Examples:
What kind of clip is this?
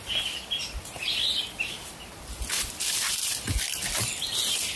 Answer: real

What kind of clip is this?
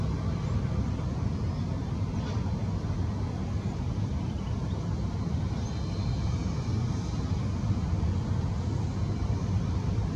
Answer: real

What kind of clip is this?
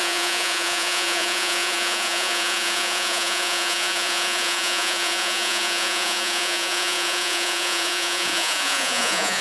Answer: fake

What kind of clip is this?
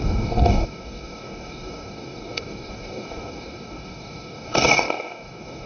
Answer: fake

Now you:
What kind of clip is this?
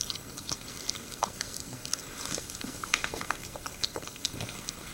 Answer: fake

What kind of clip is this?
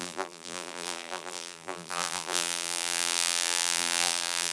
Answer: fake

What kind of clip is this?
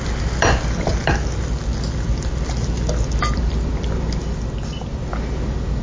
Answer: real